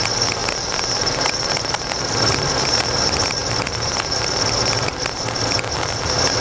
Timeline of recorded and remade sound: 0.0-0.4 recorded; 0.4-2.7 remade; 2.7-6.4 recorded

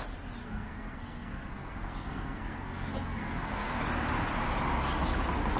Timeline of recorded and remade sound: 0.0-0.4 recorded; 0.4-3.8 remade; 3.8-5.6 recorded

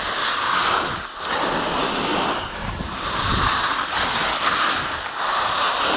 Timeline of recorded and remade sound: 0.0-6.0 recorded

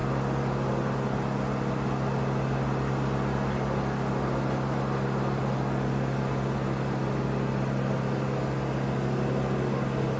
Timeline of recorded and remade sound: 0.0-10.2 recorded

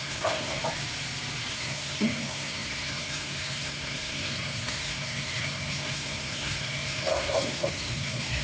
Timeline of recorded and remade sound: 0.0-0.6 remade; 0.6-1.5 recorded; 1.5-8.4 remade

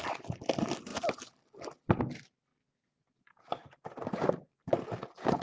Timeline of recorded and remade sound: 0.0-5.4 recorded

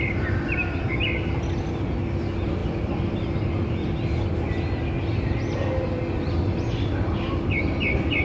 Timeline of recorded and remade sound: 0.0-8.2 recorded